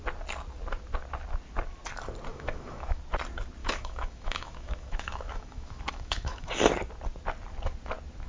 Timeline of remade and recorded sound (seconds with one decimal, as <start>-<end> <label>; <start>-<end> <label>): 0.0-2.3 recorded; 2.3-3.0 remade; 3.0-3.6 recorded; 3.6-6.5 remade; 6.5-8.3 recorded